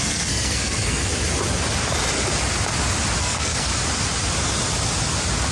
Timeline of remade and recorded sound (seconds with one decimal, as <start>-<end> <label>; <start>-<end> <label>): 0.0-1.1 remade; 1.1-3.2 recorded; 3.2-3.7 remade; 3.7-5.5 recorded